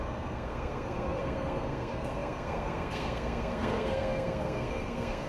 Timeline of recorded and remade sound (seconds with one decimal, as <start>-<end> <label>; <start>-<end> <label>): 0.0-5.3 remade